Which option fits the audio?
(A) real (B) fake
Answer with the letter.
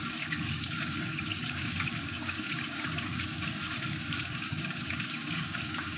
B